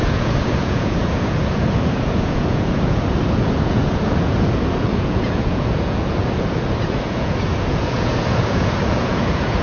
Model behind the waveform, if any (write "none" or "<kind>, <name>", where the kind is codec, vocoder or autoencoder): vocoder, Vocos